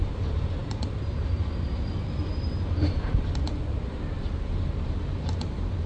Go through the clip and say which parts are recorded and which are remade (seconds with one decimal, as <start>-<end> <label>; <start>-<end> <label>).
0.0-5.9 remade

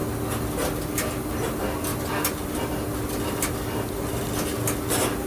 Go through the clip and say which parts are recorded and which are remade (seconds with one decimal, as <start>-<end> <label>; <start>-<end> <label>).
0.0-5.3 recorded